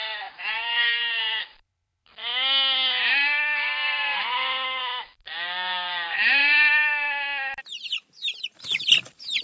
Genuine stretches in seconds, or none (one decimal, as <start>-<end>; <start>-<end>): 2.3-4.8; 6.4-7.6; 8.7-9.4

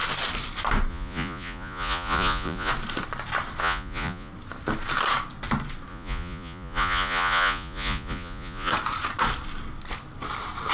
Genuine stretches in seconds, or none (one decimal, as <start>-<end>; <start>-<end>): 0.0-0.9; 2.7-3.6; 4.3-5.9; 8.7-10.7

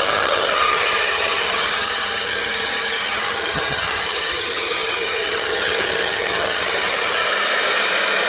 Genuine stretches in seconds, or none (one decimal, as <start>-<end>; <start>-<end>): 7.3-8.3

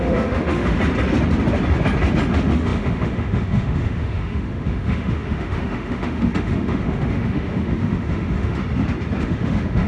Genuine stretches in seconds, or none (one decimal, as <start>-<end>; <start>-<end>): 0.8-2.3; 8.6-9.2